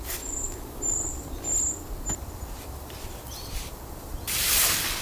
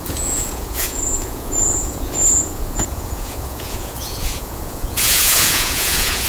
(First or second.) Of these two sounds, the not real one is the second